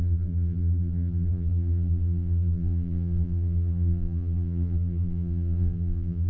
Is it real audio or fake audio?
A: fake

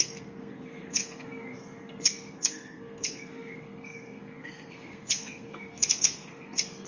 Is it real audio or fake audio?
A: fake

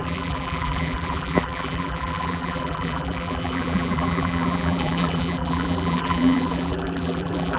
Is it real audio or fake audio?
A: fake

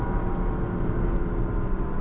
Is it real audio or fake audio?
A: real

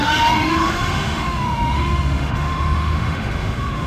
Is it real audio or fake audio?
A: fake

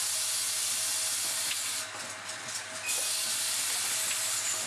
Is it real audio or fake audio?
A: real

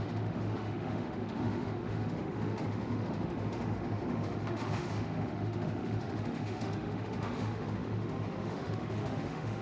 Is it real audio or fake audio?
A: fake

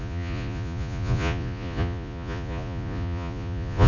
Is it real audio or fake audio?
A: fake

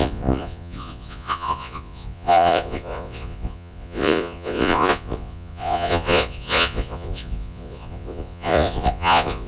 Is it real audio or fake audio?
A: fake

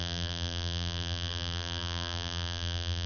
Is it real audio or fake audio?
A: fake